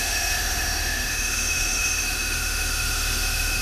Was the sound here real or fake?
fake